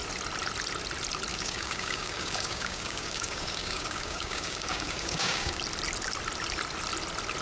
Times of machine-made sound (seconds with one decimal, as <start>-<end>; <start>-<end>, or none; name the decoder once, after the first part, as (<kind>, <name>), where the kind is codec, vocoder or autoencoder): 1.3-5.6 (codec, DAC)